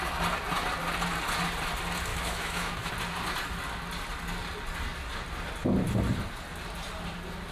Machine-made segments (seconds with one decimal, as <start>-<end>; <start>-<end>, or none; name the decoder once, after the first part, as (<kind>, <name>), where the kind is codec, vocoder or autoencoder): 2.1-2.9 (autoencoder, DAC-VAE)